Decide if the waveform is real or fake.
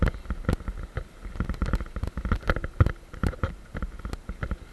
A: real